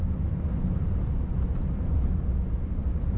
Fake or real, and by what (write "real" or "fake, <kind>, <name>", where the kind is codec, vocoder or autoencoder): real